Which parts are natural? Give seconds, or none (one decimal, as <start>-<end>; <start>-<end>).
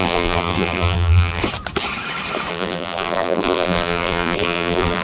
1.4-2.5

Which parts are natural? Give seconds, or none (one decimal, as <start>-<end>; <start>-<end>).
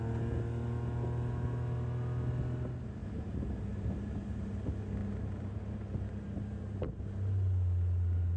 0.0-3.0; 4.5-5.0; 7.0-8.4